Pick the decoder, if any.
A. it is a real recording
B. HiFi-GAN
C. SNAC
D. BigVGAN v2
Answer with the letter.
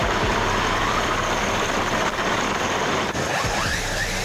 D